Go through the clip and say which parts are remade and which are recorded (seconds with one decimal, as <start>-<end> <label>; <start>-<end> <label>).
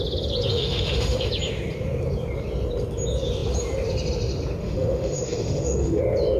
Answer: 0.0-0.5 recorded; 0.5-1.3 remade; 1.3-4.6 recorded; 4.6-6.0 remade; 6.0-6.4 recorded